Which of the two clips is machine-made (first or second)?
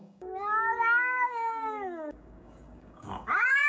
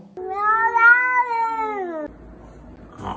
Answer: first